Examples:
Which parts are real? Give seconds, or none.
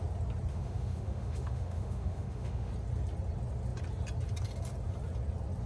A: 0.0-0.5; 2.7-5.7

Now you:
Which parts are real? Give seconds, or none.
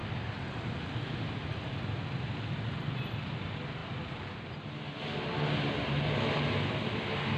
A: 0.0-7.4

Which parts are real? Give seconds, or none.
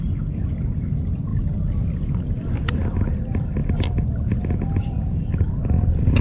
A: 0.0-6.2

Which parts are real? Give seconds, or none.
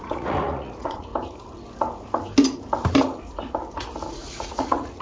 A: 1.1-4.1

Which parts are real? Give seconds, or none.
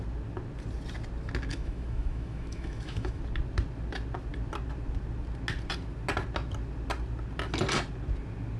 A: 0.0-1.5; 3.2-8.6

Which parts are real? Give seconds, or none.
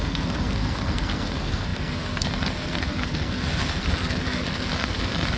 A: none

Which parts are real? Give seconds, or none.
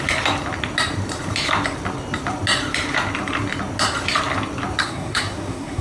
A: 0.0-4.8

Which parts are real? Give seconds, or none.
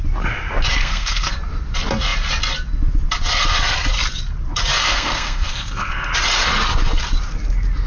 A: 0.0-0.8; 1.4-4.8; 6.1-7.9